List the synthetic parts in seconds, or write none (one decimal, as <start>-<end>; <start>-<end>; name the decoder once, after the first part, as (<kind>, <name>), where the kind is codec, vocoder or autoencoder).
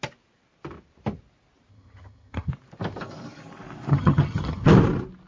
1.7-2.5 (vocoder, HiFi-GAN); 3.9-4.7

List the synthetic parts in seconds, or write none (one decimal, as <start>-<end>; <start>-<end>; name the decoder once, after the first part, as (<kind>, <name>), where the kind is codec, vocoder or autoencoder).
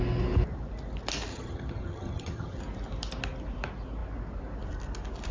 1.3-2.6 (vocoder, HiFi-GAN)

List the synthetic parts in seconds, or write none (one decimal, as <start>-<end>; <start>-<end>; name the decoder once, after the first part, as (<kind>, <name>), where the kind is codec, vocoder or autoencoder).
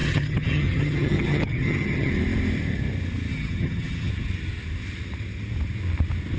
0.0-2.1 (vocoder, HiFi-GAN); 3.3-4.1